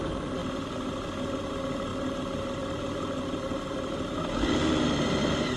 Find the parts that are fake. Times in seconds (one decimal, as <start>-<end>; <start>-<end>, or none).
none